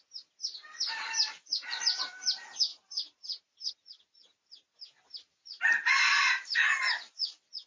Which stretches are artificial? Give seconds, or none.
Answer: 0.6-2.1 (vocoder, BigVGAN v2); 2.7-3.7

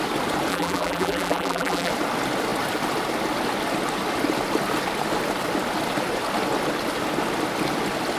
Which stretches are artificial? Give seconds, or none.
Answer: 0.5-1.9 (vocoder, BigVGAN v2)

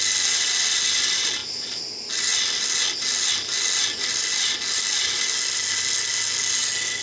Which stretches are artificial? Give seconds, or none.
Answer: none

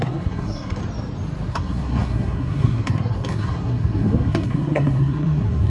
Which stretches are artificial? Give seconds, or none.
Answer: 0.0-0.8 (codec, SNAC); 1.5-5.7